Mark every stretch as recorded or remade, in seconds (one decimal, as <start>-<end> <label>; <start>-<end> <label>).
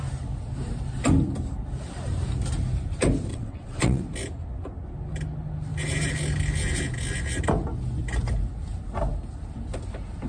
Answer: 0.0-3.3 recorded; 3.3-4.0 remade; 4.0-10.3 recorded